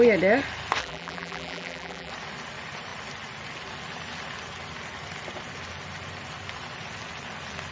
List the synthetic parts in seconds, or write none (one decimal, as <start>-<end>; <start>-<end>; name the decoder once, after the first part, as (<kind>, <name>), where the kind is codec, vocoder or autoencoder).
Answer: 0.8-2.1 (vocoder, BigVGAN v2)